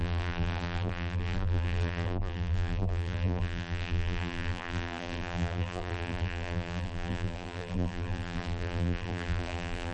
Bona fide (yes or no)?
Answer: no